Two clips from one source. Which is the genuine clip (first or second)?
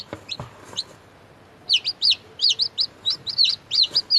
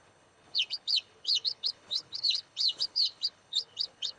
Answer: first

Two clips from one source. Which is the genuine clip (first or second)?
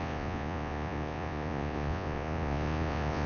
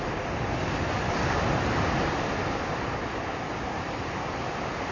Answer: second